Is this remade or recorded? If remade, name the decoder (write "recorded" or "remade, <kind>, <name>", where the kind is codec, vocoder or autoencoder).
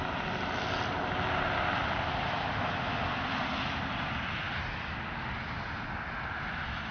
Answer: recorded